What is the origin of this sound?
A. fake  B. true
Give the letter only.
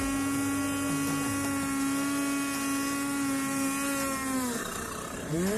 B